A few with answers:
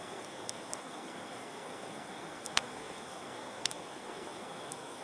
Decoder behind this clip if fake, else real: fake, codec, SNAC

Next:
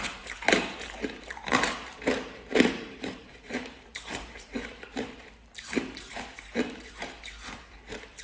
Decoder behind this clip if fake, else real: fake, vocoder, BigVGAN v2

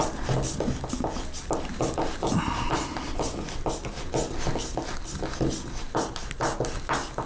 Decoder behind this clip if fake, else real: real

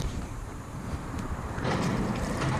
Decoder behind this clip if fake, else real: fake, vocoder, BigVGAN v2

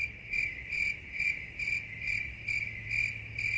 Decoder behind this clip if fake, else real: real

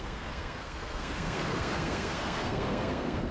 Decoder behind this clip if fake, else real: fake, codec, SNAC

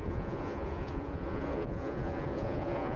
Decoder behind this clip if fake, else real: fake, vocoder, Vocos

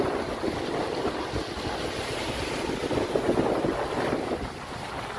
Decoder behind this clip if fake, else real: real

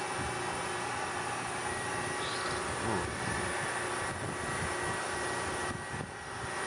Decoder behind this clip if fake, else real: real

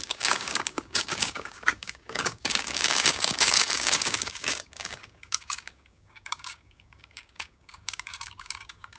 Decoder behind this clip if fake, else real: fake, codec, DAC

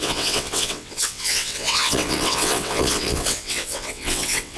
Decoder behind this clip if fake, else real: fake, vocoder, WaveNeXt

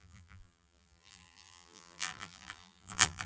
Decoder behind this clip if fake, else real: fake, vocoder, BigVGAN v2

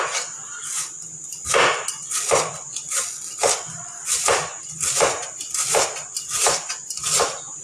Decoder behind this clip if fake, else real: real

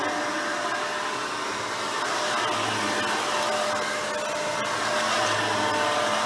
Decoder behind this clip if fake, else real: real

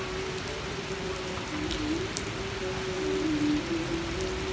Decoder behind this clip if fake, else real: real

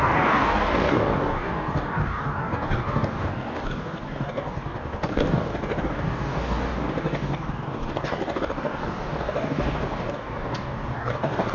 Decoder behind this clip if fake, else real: fake, codec, DAC